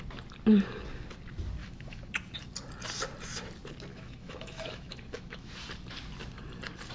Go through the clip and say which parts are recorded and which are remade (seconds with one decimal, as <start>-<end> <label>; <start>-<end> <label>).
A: 0.0-1.6 recorded; 1.6-2.1 remade; 2.1-3.9 recorded; 3.9-5.5 remade; 5.5-6.9 recorded